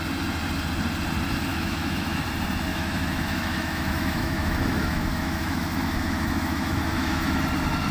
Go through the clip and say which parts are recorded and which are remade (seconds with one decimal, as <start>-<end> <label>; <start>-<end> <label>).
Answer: 0.0-1.5 recorded; 1.5-2.2 remade; 2.2-2.7 recorded; 2.7-7.4 remade; 7.4-7.9 recorded

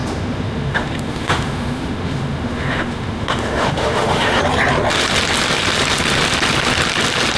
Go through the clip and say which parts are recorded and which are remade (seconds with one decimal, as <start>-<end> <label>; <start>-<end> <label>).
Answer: 0.0-4.4 remade; 4.4-7.4 recorded

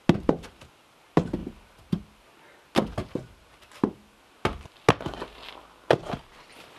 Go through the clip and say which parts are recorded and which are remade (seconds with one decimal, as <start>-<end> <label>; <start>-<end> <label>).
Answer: 0.0-6.8 recorded

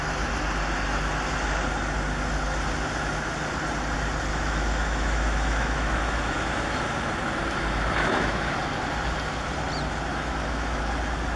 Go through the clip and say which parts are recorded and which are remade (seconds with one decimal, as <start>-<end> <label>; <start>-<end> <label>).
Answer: 0.0-4.3 recorded; 4.3-6.8 remade; 6.8-8.0 recorded; 8.0-8.5 remade; 8.5-10.1 recorded; 10.1-10.8 remade; 10.8-11.4 recorded

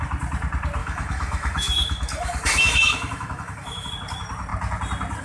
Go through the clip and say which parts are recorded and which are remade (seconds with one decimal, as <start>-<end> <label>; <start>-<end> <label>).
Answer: 0.0-0.8 recorded; 0.8-3.9 remade; 3.9-5.2 recorded

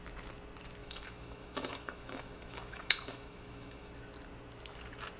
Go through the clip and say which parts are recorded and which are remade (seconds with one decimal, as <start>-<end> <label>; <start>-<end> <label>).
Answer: 0.0-0.8 recorded; 0.8-3.9 remade; 3.9-5.2 recorded